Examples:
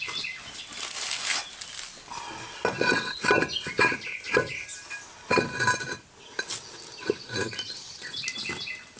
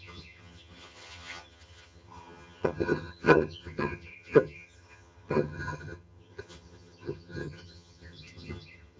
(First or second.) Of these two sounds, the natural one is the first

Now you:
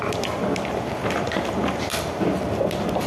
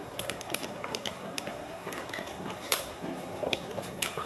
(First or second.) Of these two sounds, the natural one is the first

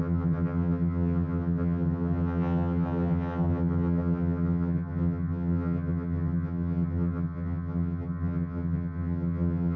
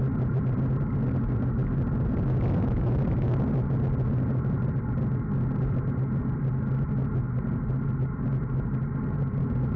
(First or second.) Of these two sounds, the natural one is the second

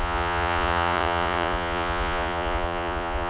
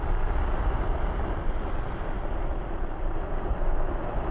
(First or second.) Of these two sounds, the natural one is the second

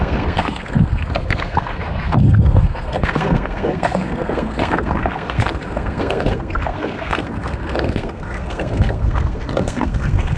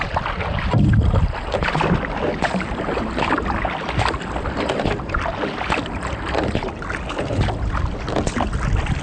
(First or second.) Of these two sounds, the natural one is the second